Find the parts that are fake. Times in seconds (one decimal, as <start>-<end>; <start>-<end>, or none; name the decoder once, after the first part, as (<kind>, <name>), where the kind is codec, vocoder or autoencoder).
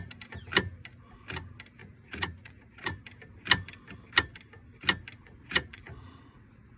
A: 1.8-3.0 (vocoder, Vocos); 5.2-6.8